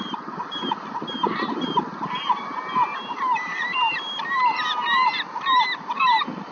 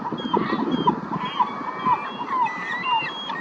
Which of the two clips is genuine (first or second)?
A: second